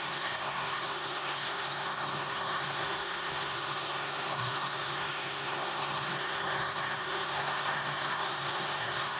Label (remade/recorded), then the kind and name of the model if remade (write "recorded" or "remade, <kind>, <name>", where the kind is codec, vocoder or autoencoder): remade, codec, SNAC